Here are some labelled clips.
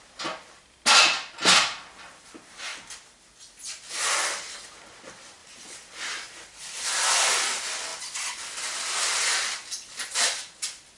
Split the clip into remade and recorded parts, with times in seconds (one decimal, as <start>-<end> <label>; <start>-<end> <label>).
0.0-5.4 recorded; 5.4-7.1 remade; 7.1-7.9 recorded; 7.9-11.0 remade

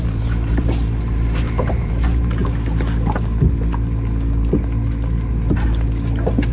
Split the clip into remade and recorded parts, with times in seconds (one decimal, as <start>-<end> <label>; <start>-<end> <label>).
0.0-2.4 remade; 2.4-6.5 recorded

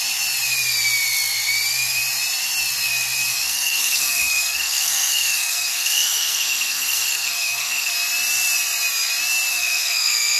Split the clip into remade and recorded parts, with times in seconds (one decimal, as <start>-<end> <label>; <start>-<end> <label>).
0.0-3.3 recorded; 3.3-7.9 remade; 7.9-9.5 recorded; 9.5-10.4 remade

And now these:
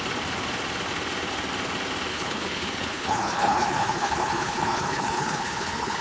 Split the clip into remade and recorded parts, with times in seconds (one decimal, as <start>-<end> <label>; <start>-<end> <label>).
0.0-2.1 recorded; 2.1-6.0 remade

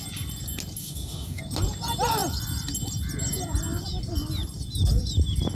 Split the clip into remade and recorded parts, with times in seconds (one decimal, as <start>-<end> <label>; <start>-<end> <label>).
0.0-0.8 recorded; 0.8-1.4 remade; 1.4-5.5 recorded

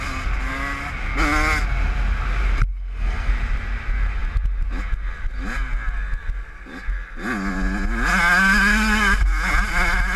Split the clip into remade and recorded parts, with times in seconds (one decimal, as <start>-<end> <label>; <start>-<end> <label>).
0.0-2.7 recorded; 2.7-3.3 remade; 3.3-10.2 recorded